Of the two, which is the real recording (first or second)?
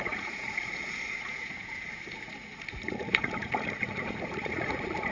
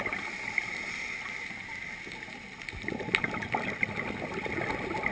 second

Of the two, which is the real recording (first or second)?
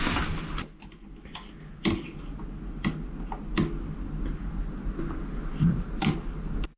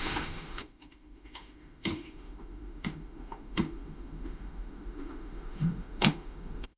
first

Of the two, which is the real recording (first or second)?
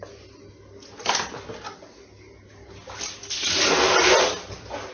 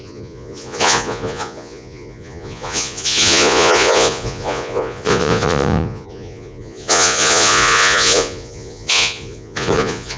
first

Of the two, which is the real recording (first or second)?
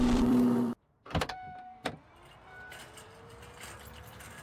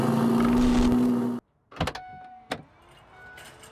second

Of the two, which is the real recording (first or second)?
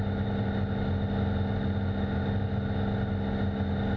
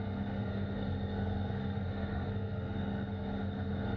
first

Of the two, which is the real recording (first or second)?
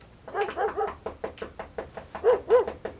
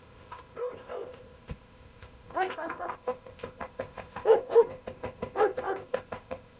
first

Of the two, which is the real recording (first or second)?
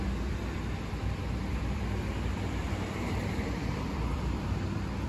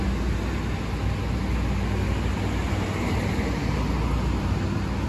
second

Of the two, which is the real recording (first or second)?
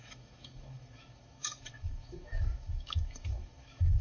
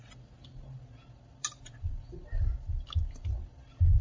second